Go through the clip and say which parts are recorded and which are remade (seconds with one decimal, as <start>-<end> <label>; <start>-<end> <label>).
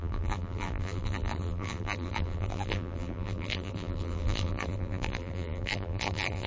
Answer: 0.0-6.5 remade